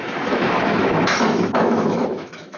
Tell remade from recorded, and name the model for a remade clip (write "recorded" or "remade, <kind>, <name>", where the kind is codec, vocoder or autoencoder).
remade, autoencoder, DAC-VAE